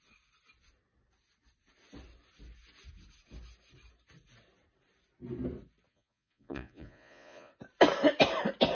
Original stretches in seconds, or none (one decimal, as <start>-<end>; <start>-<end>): 0.0-5.9; 7.5-8.7